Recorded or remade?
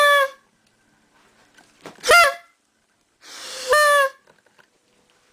recorded